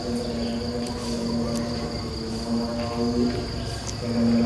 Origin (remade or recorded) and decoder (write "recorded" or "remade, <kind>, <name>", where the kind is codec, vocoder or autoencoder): recorded